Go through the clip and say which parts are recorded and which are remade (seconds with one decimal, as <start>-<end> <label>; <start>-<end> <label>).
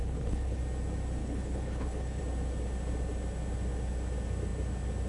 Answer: 0.0-0.6 remade; 0.6-1.2 recorded; 1.2-2.2 remade; 2.2-5.1 recorded